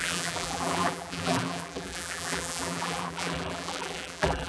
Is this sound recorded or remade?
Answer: remade